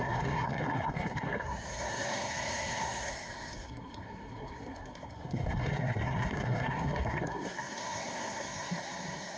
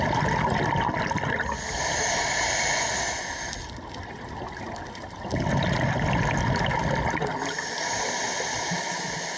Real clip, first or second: second